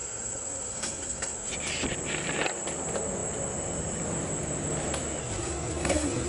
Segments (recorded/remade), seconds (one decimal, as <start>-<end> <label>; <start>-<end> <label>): 0.0-1.5 remade; 1.5-5.2 recorded; 5.2-6.3 remade